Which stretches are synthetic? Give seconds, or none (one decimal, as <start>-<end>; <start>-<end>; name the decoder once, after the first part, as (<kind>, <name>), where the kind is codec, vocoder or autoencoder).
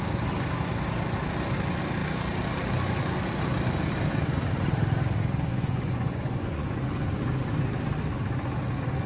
5.5-6.8 (vocoder, Vocos)